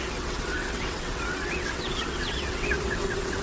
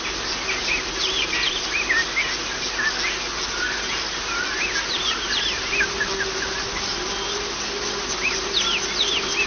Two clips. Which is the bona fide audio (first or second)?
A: second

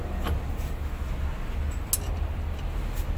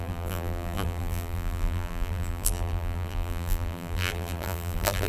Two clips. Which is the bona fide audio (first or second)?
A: first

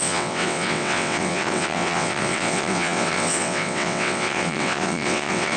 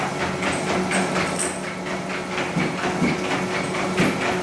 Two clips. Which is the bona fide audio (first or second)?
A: second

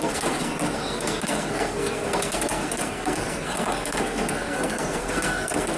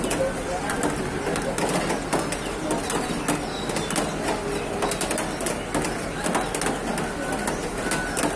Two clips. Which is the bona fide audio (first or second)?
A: second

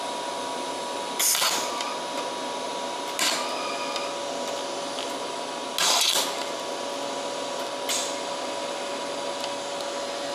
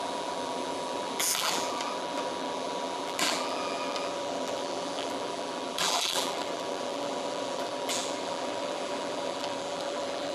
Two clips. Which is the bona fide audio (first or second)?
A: first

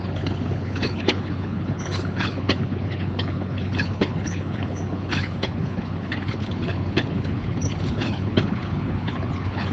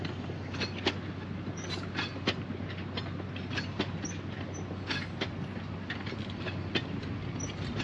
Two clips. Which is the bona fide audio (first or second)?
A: second